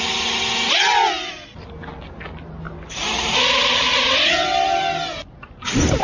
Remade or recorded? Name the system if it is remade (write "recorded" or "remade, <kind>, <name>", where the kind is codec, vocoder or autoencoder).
recorded